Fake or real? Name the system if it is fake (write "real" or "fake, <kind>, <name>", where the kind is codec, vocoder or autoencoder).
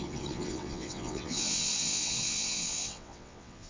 fake, vocoder, WaveNeXt